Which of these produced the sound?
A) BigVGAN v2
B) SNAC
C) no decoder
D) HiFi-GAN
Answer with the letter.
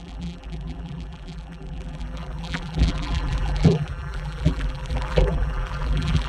A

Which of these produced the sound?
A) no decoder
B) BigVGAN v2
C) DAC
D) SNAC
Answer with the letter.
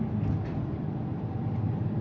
B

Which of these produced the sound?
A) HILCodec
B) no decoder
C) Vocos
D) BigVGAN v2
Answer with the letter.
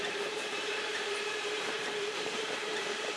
D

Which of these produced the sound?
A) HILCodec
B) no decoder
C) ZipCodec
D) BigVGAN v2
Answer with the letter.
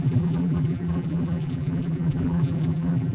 D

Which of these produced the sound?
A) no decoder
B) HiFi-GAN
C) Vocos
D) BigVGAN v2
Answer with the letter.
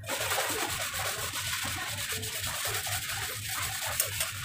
D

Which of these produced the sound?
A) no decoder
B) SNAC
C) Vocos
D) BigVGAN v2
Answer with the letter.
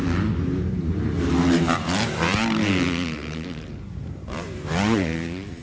D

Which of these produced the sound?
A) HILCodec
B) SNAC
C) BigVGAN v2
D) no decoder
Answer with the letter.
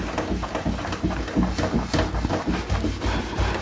D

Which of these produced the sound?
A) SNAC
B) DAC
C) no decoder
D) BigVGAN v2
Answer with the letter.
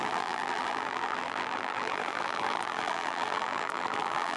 D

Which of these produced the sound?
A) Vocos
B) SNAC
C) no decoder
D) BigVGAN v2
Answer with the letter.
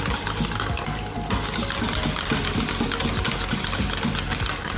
C